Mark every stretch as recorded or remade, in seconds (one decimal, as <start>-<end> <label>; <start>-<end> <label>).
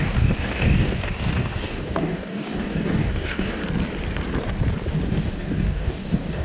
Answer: 0.0-3.6 remade; 3.6-5.1 recorded; 5.1-6.4 remade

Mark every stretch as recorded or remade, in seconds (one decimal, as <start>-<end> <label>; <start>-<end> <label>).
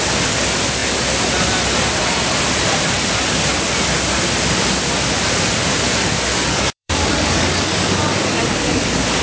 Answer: 0.0-6.3 recorded; 6.3-9.2 remade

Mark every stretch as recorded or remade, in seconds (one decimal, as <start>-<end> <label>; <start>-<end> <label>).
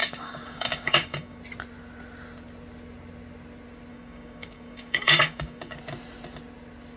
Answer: 0.0-1.4 remade; 1.4-3.9 recorded; 3.9-5.8 remade; 5.8-7.0 recorded